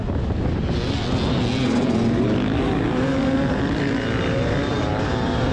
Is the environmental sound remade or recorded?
recorded